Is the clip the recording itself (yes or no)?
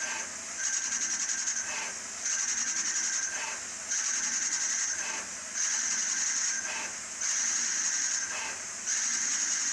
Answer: yes